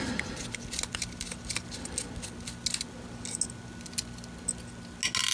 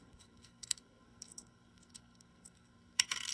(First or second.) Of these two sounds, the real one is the first